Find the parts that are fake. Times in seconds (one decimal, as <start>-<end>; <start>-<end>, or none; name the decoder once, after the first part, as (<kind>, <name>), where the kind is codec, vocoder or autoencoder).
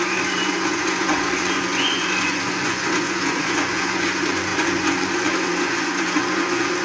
0.0-6.8 (vocoder, Vocos)